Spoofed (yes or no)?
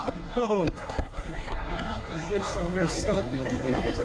yes